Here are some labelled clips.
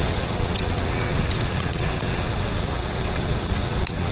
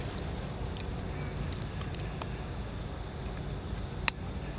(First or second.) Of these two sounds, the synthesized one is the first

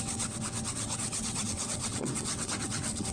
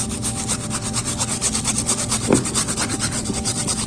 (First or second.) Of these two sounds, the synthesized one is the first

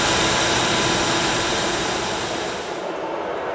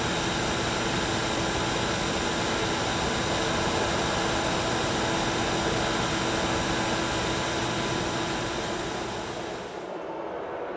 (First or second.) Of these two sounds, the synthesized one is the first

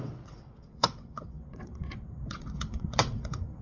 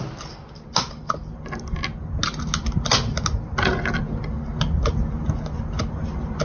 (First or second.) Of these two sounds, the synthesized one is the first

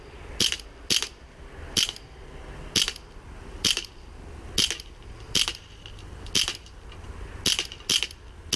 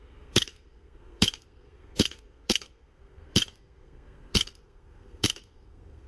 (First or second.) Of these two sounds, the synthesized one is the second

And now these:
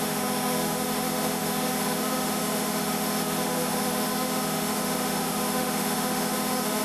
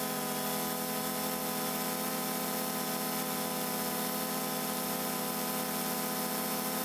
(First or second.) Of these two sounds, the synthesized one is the first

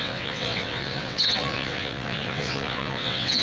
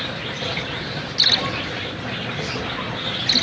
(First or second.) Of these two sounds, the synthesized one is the first